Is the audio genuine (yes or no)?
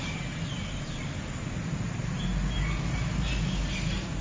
yes